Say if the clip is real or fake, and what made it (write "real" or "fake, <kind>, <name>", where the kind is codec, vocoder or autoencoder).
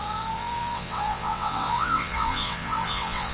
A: fake, vocoder, WaveNeXt